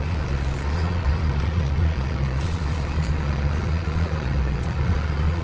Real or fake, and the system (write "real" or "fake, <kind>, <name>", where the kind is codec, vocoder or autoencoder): fake, vocoder, Vocos